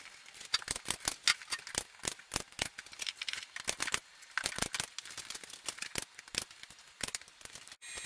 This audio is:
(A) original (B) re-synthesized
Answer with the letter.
A